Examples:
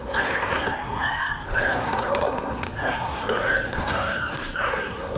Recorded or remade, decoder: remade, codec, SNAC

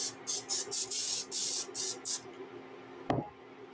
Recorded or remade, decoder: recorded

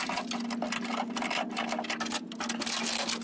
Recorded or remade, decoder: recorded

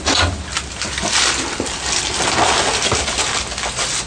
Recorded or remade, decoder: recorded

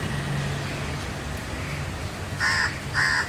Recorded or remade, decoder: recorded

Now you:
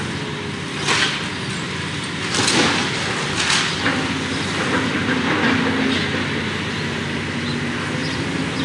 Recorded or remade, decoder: recorded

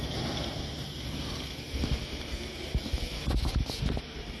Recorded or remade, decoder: recorded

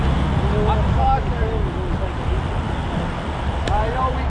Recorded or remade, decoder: recorded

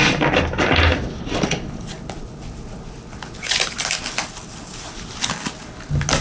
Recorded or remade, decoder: recorded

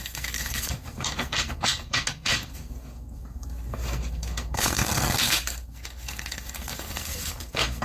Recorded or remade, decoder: remade, codec, SNAC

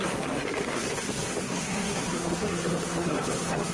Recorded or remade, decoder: remade, codec, SNAC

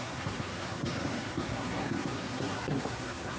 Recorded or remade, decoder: remade, codec, SNAC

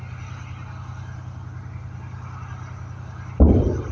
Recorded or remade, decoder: recorded